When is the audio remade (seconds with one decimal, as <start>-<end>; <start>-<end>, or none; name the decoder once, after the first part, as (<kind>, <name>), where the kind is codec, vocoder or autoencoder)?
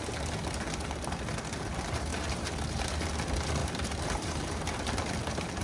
2.1-2.9 (vocoder, BigVGAN v2); 3.6-5.6